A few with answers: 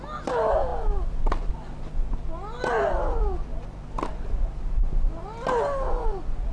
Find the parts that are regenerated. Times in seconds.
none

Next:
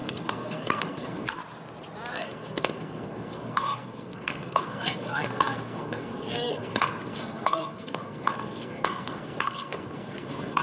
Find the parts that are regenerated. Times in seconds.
0.0-1.4 (codec, SNAC); 2.1-10.6

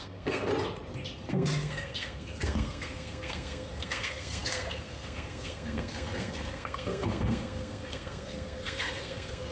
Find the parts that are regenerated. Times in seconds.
0.0-0.5 (codec, SNAC); 1.3-9.5

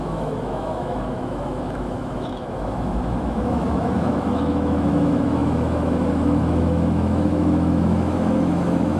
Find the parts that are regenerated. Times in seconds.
0.0-9.0 (autoencoder, DAC-VAE)

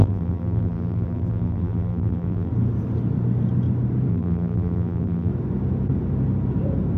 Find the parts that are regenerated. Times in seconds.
0.0-2.5 (vocoder, BigVGAN v2); 4.1-5.3

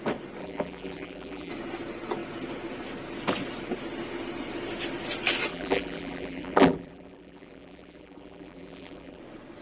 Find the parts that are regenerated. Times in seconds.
0.4-1.5 (vocoder, BigVGAN v2); 5.5-9.2

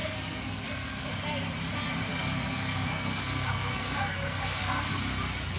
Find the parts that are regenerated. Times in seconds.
0.0-1.1 (codec, SNAC); 2.1-4.9